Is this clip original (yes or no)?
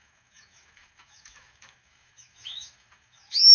no